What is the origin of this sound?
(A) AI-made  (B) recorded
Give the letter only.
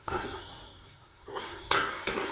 A